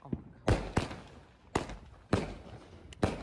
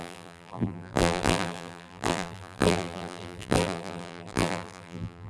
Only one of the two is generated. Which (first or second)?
second